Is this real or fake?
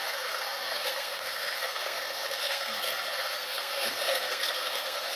fake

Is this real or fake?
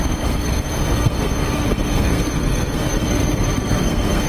fake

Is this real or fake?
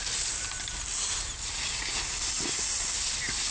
real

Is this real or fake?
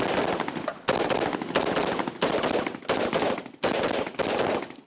real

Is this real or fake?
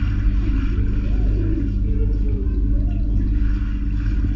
real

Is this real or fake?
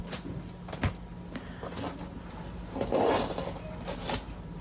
real